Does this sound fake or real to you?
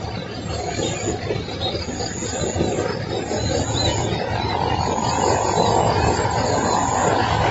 real